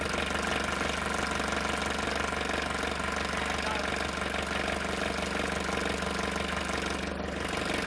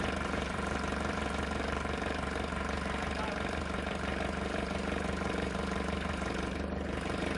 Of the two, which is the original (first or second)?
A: first